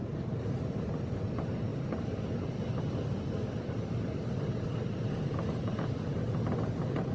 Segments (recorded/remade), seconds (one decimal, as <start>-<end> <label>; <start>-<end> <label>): 0.0-7.1 recorded